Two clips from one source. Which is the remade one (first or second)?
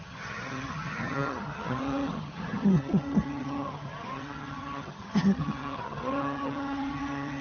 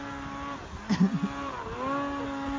first